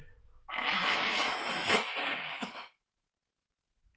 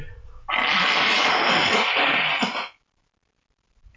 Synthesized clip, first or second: first